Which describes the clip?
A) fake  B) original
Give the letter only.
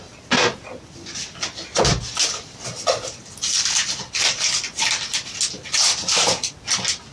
B